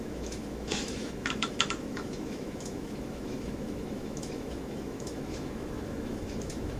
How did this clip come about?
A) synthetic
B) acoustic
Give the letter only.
A